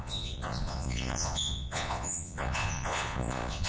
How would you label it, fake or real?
fake